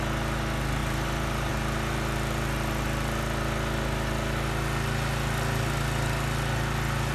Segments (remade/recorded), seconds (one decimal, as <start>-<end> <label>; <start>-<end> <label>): 0.0-0.8 recorded; 0.8-1.5 remade; 1.5-7.1 recorded